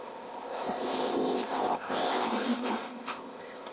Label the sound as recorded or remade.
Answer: remade